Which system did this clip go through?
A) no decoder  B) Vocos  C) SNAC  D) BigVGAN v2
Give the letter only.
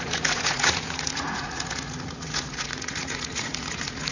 B